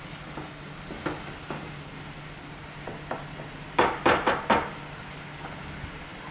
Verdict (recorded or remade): recorded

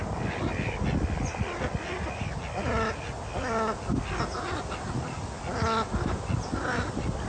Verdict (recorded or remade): recorded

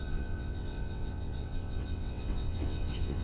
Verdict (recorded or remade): remade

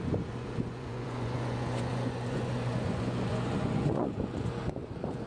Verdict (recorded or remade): remade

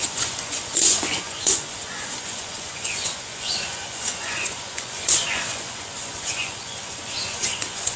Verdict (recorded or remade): remade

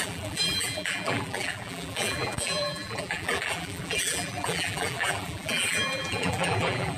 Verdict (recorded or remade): remade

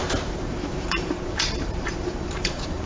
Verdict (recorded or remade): remade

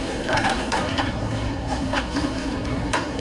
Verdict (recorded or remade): remade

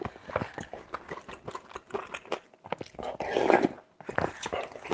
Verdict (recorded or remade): recorded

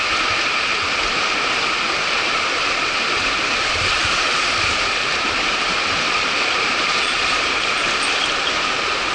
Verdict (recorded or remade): remade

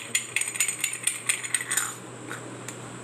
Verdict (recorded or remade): remade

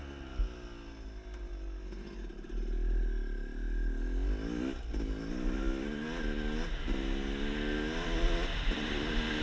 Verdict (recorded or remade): recorded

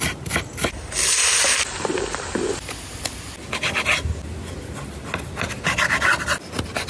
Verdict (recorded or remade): recorded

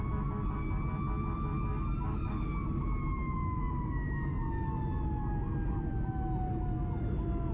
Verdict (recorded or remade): recorded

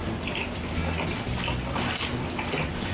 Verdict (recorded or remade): recorded